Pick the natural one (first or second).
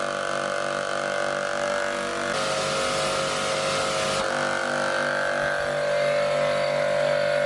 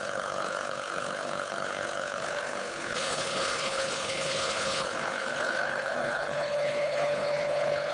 first